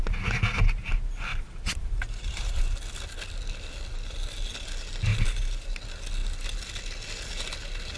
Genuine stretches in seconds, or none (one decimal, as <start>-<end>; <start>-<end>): 0.0-1.3; 2.6-5.1; 5.8-8.0